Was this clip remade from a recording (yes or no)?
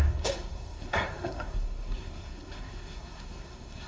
yes